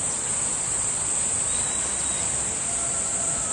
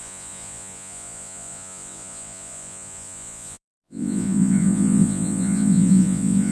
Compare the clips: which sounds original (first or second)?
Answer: first